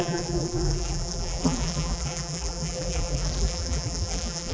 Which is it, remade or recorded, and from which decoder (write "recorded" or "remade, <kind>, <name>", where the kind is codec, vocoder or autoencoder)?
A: remade, vocoder, BigVGAN v2